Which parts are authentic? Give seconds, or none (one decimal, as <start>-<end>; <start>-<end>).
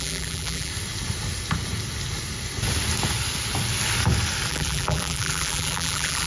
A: 0.7-4.5